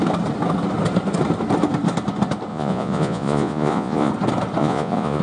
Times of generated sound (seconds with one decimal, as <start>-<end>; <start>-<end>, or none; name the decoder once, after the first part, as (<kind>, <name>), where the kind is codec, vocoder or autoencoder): 2.5-4.1 (vocoder, Vocos); 4.6-5.2